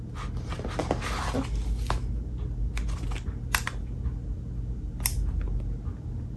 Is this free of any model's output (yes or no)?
yes